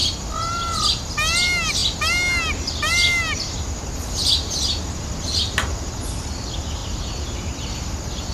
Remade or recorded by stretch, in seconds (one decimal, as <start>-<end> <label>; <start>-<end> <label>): 0.0-8.3 recorded